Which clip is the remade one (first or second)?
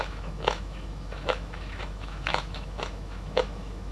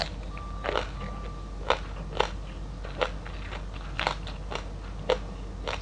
first